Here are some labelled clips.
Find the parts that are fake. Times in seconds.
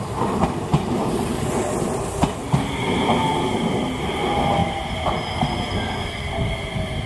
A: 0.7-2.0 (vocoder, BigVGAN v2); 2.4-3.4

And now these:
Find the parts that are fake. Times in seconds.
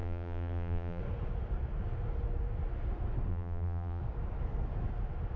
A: 0.0-1.0 (vocoder, BigVGAN v2); 3.3-4.0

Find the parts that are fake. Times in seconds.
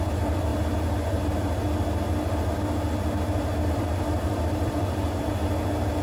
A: 0.0-0.5 (vocoder, BigVGAN v2); 3.7-5.3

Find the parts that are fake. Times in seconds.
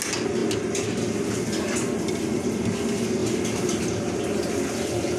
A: none